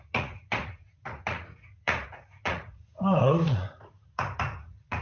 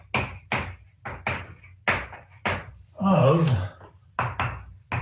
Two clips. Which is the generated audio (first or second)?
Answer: first